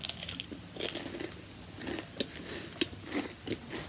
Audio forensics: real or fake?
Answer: real